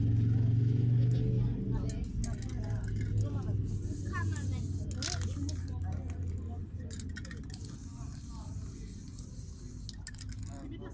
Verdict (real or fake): real